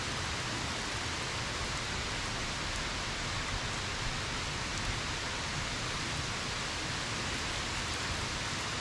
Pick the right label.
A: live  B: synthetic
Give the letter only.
A